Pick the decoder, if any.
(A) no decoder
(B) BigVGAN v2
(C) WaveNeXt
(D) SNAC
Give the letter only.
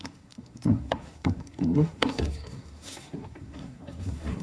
D